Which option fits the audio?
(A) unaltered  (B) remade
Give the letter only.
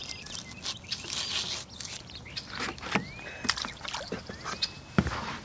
A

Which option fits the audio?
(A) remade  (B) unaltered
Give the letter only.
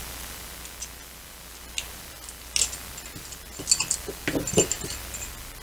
B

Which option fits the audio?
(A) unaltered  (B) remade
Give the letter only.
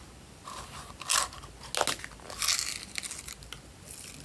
A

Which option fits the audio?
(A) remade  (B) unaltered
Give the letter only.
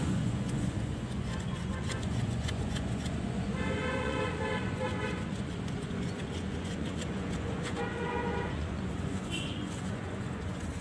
A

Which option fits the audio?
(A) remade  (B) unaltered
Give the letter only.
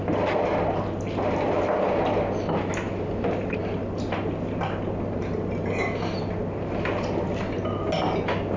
B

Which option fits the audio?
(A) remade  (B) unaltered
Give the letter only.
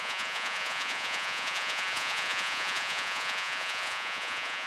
A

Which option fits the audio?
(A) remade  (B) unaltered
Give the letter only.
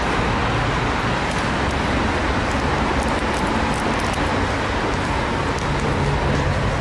B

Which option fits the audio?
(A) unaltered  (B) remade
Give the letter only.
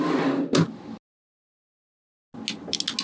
A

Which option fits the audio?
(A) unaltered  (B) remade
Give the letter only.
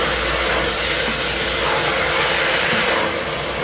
A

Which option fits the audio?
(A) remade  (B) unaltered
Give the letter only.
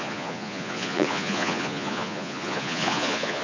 A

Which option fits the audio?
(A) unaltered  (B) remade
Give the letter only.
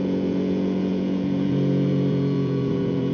B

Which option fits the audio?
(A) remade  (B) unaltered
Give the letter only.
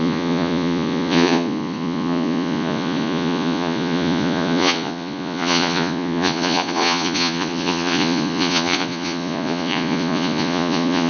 A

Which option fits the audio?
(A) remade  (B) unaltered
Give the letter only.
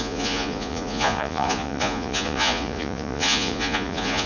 A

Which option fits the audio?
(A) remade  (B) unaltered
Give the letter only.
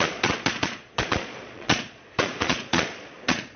A